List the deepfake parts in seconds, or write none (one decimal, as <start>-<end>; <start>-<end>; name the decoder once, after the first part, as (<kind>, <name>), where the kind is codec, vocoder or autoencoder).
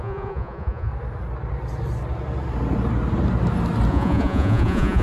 0.0-0.9 (vocoder, Vocos); 3.9-5.0